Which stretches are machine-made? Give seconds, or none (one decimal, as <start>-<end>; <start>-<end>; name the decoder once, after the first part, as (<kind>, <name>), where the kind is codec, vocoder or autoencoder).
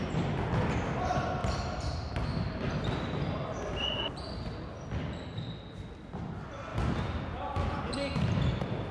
1.4-2.1 (vocoder, BigVGAN v2); 6.7-7.8